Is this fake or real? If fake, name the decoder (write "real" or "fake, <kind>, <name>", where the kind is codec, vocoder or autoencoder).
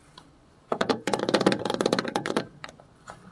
fake, vocoder, Vocos